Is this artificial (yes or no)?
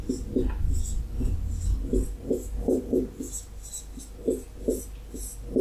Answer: no